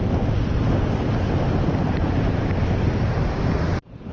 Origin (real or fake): real